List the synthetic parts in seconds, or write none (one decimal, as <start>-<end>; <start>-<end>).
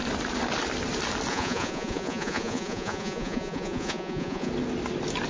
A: 1.3-4.5